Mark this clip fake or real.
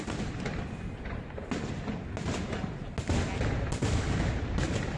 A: real